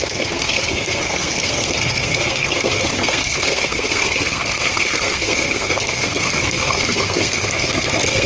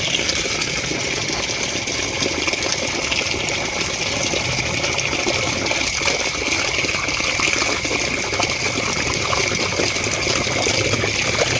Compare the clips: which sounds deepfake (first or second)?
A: first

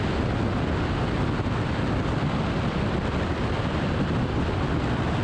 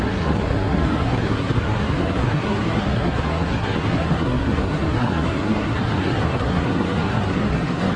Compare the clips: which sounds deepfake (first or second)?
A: second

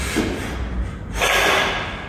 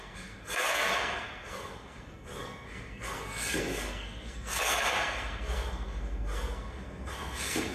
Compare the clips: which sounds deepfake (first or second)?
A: second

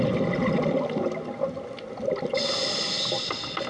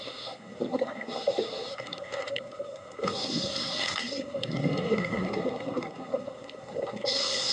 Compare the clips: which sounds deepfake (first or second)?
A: second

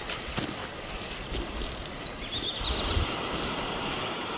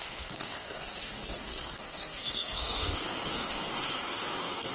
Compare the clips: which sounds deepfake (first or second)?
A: second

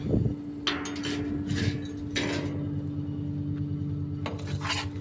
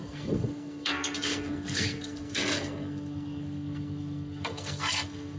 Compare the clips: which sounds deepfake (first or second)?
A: second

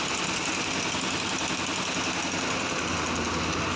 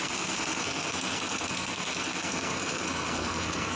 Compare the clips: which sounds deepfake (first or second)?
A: second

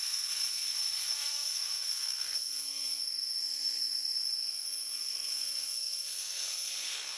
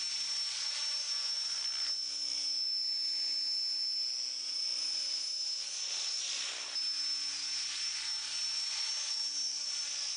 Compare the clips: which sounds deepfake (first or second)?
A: first